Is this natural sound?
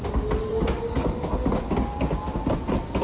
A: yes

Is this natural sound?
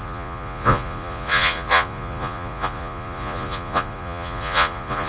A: no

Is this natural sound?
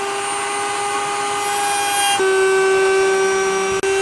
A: yes